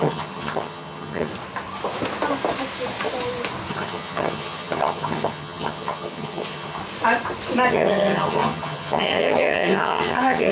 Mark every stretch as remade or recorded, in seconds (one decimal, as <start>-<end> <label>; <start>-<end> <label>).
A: 0.0-1.3 remade; 1.3-3.7 recorded; 3.7-6.8 remade; 6.8-7.7 recorded; 7.7-10.5 remade